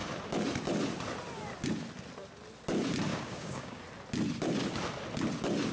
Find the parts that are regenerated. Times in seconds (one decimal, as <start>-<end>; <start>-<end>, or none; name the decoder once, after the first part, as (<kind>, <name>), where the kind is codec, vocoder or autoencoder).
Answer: 3.1-3.8 (codec, DAC)